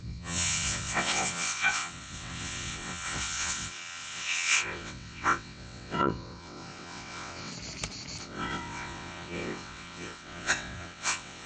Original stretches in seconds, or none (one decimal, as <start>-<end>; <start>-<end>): 7.5-8.2